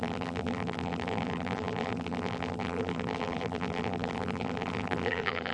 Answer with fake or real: fake